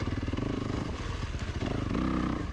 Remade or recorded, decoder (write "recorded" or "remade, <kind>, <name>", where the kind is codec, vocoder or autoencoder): recorded